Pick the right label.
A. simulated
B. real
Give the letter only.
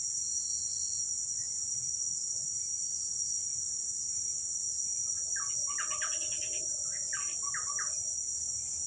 B